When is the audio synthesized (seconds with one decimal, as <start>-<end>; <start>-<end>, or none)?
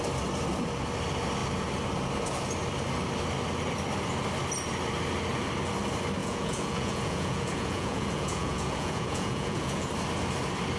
6.2-9.9